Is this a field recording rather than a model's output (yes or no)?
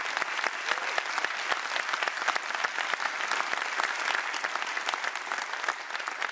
yes